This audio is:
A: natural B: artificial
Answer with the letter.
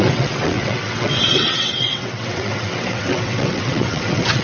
B